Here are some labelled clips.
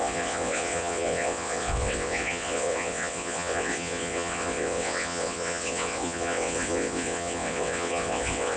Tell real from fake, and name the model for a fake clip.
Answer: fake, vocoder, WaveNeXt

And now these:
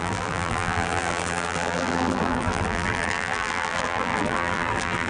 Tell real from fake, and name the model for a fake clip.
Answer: fake, vocoder, BigVGAN v2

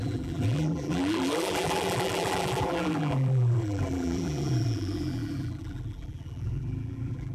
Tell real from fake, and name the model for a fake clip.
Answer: fake, vocoder, BigVGAN v2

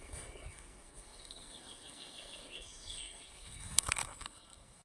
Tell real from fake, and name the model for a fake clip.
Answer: fake, codec, SNAC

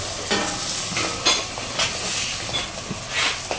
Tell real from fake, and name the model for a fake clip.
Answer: real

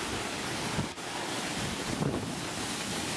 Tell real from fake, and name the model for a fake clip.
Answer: fake, codec, DAC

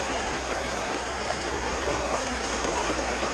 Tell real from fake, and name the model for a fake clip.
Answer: fake, codec, SNAC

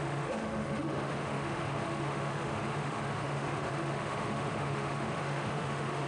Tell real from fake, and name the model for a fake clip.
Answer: fake, autoencoder, DAC-VAE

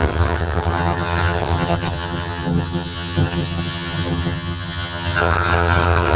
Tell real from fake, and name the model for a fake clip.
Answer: fake, vocoder, HiFi-GAN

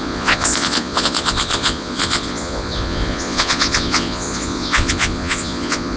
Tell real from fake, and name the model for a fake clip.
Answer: fake, vocoder, Vocos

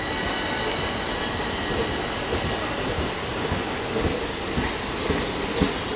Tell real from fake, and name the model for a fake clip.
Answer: real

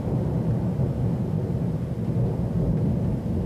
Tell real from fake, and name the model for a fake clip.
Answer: real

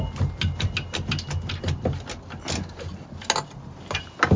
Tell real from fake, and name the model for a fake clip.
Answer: real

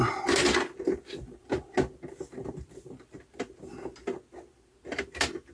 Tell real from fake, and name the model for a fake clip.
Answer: real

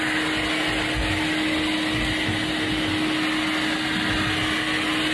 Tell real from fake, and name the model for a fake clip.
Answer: real